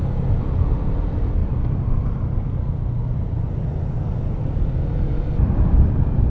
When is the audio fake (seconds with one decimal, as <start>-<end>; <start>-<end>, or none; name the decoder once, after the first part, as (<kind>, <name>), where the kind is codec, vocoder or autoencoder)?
none